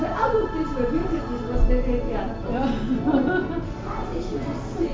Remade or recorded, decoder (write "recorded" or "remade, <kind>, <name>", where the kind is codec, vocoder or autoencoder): recorded